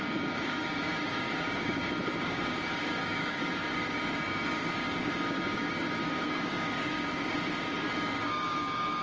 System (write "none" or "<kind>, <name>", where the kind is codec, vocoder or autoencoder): codec, DAC